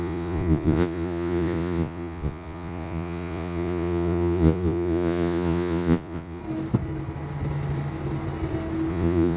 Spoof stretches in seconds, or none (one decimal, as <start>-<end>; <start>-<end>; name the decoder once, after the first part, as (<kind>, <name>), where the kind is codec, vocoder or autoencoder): 0.0-6.4 (vocoder, Vocos); 8.9-9.4